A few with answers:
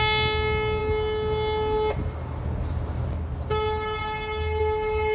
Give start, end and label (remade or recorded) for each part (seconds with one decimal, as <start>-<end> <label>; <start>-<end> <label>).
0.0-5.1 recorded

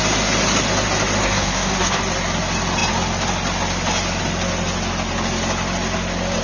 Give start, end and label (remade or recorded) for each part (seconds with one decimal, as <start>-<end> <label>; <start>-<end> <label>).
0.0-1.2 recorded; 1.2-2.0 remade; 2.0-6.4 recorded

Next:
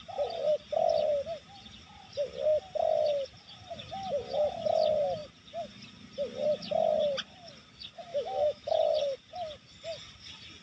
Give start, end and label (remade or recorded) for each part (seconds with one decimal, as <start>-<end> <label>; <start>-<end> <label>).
0.0-8.1 recorded; 8.1-8.8 remade; 8.8-10.6 recorded

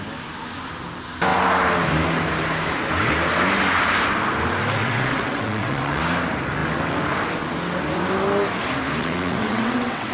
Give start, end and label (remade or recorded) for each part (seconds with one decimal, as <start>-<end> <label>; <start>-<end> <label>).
0.0-4.8 recorded; 4.8-6.0 remade; 6.0-9.0 recorded; 9.0-10.1 remade